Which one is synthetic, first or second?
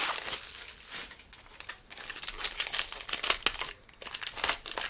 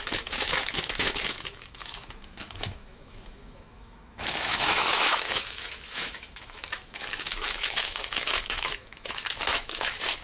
second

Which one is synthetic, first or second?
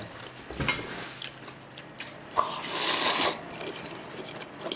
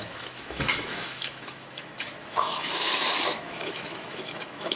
second